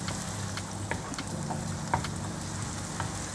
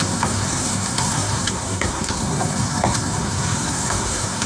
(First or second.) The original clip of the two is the first